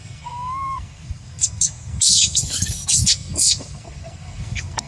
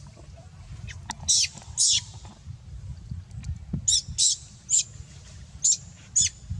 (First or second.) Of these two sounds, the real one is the second